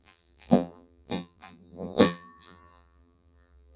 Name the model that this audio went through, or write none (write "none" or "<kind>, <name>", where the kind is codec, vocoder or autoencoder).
vocoder, BigVGAN v2